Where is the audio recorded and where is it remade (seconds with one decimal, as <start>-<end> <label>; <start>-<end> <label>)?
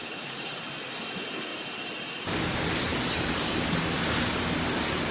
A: 0.0-5.1 recorded